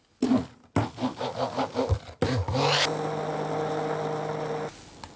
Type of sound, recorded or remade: recorded